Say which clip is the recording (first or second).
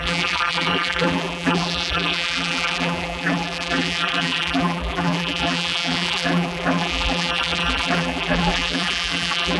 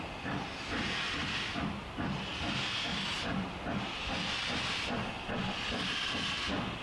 second